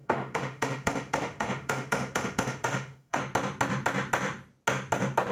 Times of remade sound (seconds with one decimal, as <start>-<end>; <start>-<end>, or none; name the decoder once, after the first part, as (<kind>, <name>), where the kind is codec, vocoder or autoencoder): 0.0-3.2 (autoencoder, DAC-VAE)